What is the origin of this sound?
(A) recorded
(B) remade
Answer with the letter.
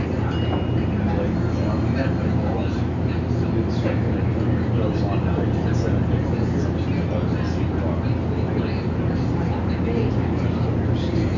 A